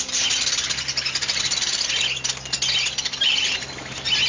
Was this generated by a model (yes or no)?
no